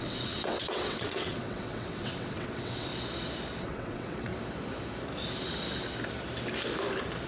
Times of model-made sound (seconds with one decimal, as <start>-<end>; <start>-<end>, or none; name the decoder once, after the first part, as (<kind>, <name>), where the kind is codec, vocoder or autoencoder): 0.0-2.9 (vocoder, WaveNeXt); 3.6-4.3